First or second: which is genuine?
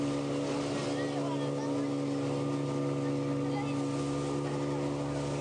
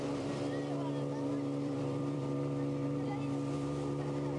first